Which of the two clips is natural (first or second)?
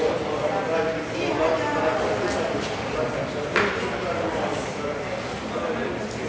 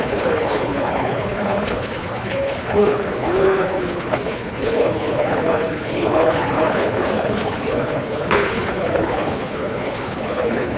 first